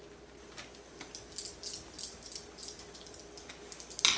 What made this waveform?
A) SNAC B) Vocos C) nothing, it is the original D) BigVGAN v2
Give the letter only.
C